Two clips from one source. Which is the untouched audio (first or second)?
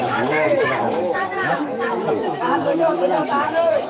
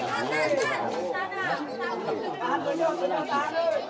second